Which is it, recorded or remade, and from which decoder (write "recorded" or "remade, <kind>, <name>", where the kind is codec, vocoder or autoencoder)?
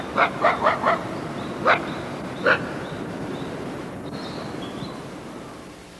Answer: remade, vocoder, BigVGAN v2